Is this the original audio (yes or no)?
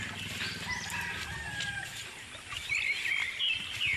yes